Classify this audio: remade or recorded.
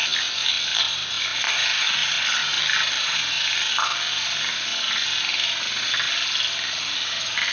recorded